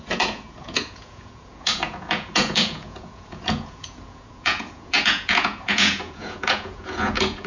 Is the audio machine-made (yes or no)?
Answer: yes